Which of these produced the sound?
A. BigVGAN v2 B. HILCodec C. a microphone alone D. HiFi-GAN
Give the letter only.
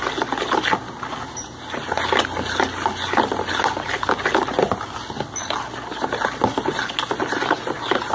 C